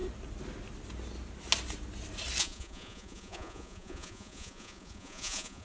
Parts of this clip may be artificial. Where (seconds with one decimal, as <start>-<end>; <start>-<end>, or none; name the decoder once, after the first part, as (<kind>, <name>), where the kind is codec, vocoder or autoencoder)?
2.4-5.6 (vocoder, Vocos)